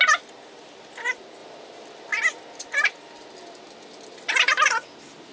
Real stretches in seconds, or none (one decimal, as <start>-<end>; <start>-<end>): 0.0-5.3